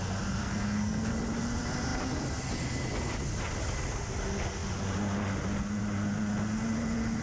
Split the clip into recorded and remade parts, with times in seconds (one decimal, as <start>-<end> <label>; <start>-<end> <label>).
0.0-0.4 recorded; 0.4-1.1 remade; 1.1-7.2 recorded